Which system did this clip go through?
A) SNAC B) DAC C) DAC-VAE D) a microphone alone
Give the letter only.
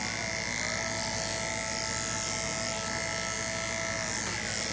D